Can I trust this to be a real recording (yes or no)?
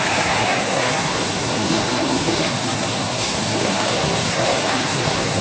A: no